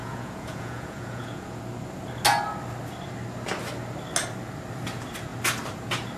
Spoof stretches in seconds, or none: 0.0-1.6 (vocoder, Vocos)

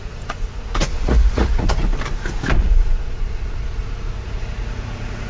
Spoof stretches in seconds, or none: 0.0-1.8 (vocoder, Vocos); 2.6-5.3